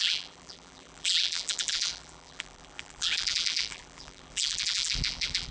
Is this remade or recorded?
remade